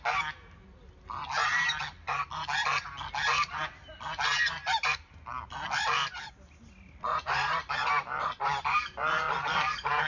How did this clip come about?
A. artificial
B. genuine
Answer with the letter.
B